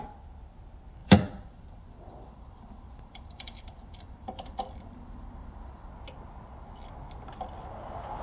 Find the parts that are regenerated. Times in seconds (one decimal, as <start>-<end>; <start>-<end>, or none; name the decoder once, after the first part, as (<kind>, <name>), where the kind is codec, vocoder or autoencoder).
1.0-5.9 (vocoder, BigVGAN v2)